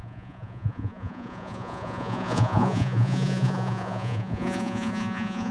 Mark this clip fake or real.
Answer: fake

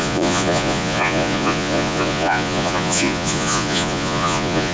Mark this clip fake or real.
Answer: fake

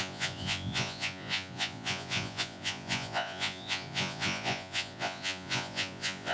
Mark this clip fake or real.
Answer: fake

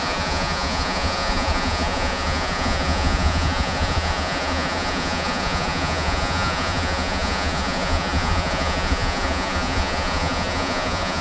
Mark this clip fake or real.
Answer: fake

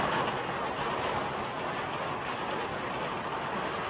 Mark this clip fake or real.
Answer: real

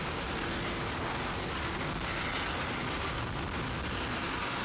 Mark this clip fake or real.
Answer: real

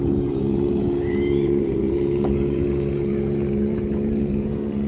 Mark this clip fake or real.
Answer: fake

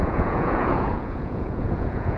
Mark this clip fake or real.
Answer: fake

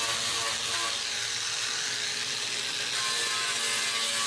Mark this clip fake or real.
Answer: real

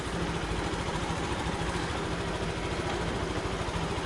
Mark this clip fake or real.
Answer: real